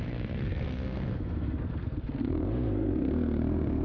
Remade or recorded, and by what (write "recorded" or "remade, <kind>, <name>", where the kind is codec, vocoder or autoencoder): remade, codec, SNAC